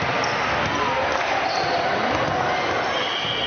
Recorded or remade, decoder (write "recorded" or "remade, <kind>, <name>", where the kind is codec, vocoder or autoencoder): recorded